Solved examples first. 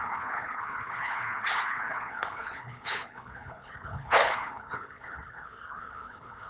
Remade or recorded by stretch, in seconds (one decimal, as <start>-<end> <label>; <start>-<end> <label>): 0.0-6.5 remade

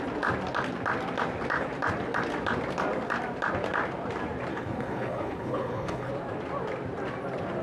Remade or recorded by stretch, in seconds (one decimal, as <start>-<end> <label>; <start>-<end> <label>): 0.0-4.5 recorded; 4.5-6.1 remade; 6.1-7.6 recorded

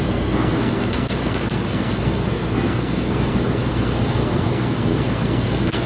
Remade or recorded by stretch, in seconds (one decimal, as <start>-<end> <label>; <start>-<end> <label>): 0.0-5.9 remade

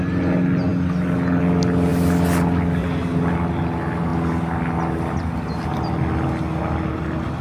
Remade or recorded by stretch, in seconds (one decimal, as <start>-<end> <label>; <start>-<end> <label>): 0.0-7.4 recorded